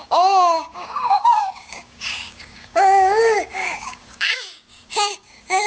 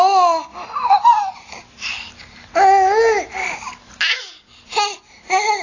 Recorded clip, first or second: second